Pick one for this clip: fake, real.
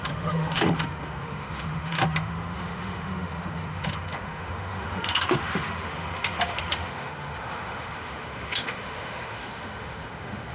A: fake